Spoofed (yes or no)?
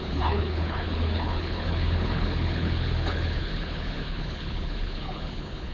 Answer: yes